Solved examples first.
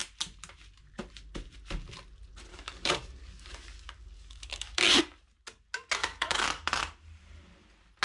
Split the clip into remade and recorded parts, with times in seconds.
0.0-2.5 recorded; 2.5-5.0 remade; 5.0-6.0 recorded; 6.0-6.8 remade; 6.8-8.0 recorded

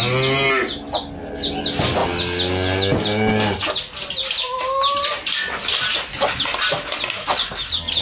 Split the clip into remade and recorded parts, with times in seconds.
0.0-8.0 recorded

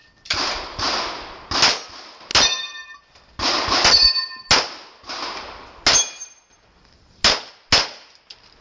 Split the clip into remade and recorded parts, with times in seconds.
0.0-8.6 recorded

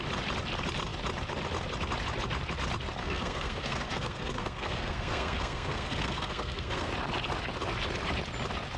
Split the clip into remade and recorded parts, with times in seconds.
0.0-3.0 recorded; 3.0-6.9 remade; 6.9-8.8 recorded

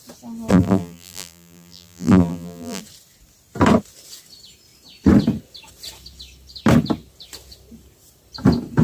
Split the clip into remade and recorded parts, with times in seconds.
0.0-0.5 recorded; 0.5-2.8 remade; 2.8-8.8 recorded

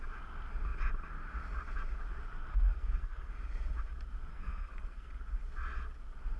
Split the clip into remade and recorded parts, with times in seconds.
0.0-2.5 recorded; 2.5-3.3 remade; 3.3-4.3 recorded; 4.3-5.1 remade; 5.1-6.4 recorded

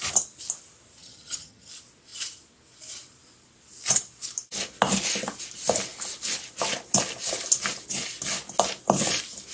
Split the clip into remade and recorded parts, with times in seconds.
0.0-1.0 recorded; 1.0-1.7 remade; 1.7-9.5 recorded